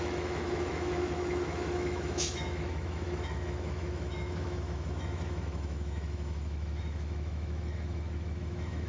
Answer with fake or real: fake